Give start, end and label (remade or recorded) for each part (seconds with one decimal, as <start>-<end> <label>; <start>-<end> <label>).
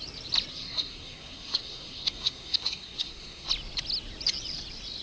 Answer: 0.0-0.5 recorded; 0.5-3.5 remade; 3.5-5.0 recorded